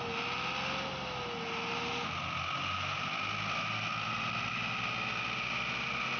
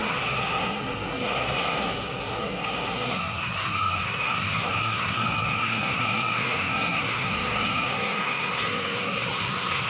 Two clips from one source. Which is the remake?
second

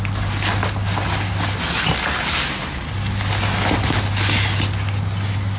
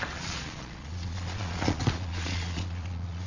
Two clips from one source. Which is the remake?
second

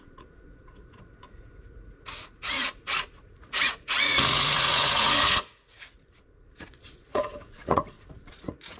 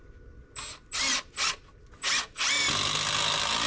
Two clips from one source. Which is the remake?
first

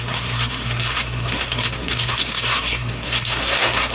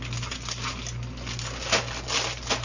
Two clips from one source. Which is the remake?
first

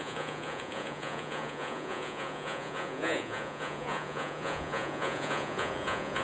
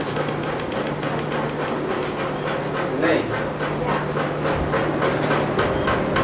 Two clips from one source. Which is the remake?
first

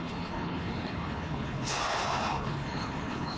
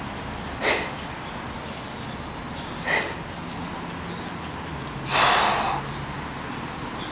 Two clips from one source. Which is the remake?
first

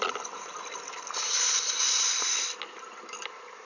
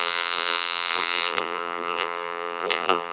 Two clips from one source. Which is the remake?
second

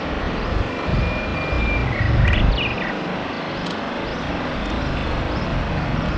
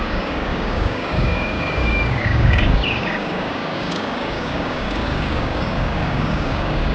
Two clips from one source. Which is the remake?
second